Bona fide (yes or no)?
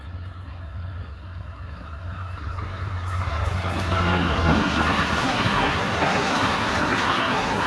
no